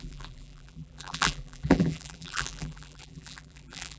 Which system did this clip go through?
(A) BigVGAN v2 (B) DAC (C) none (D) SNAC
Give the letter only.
A